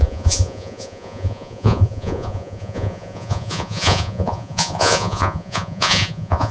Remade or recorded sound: remade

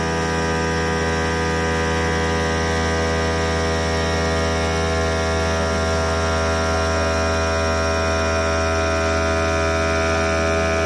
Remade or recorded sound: recorded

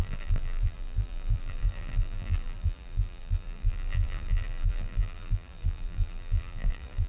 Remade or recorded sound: remade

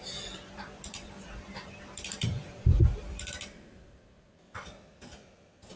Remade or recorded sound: remade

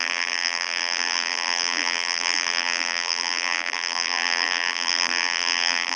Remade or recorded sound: remade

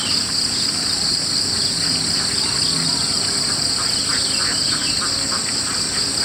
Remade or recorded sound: recorded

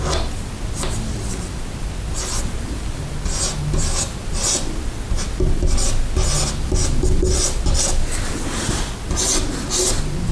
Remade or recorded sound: recorded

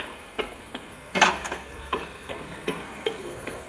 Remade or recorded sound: remade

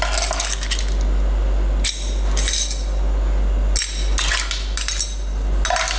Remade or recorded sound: recorded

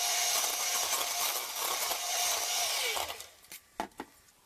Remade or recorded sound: recorded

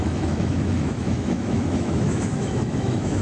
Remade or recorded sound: remade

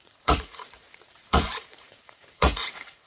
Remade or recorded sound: remade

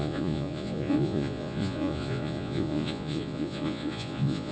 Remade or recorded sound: remade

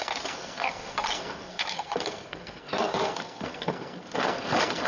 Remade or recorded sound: remade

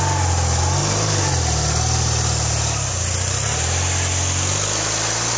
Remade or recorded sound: recorded